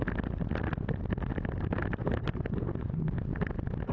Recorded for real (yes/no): yes